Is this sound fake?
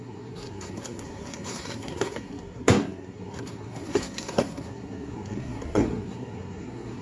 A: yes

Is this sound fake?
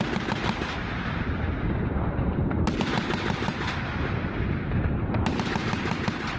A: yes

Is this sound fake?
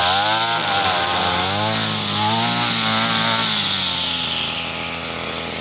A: no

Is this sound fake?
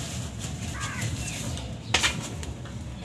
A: no